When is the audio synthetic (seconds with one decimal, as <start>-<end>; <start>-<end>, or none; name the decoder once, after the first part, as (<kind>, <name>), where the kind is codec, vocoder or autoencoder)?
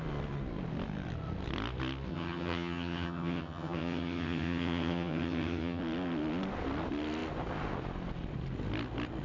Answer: 2.1-5.8 (vocoder, HiFi-GAN)